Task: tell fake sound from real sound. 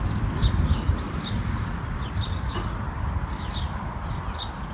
real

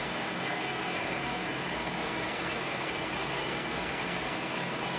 fake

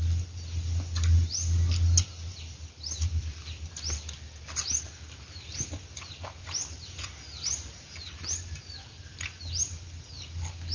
real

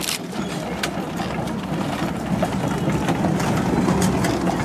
real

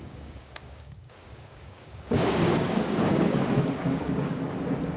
fake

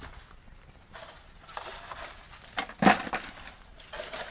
real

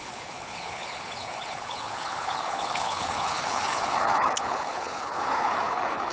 fake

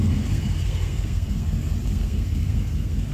fake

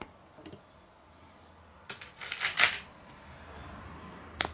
real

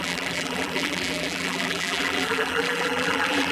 fake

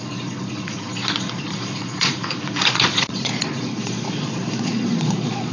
fake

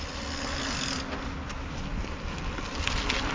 real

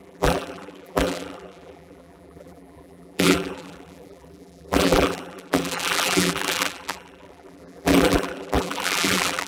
fake